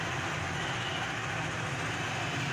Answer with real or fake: real